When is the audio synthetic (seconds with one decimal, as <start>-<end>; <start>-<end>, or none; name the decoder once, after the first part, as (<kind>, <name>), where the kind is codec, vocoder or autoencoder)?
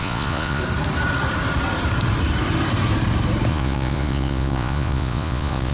0.0-0.6 (vocoder, Vocos); 3.5-5.7